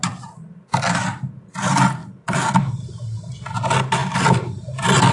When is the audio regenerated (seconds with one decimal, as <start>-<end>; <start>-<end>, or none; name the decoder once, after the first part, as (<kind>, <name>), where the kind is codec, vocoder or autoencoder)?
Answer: 2.0-2.9 (vocoder, BigVGAN v2); 4.0-4.6